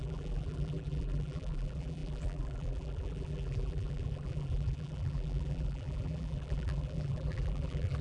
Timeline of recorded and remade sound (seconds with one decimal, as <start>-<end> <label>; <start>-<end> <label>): 0.0-8.0 remade